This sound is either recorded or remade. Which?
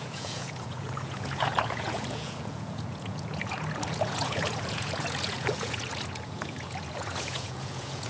remade